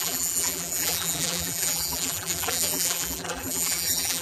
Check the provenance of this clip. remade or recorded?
remade